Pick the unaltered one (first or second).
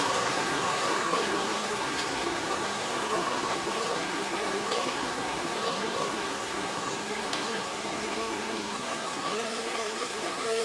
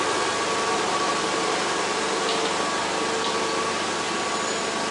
second